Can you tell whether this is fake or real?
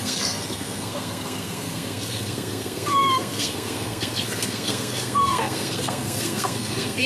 fake